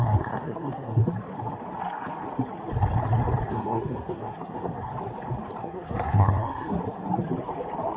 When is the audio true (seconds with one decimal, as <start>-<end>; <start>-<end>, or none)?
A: 1.0-3.5; 4.9-5.6; 6.8-8.0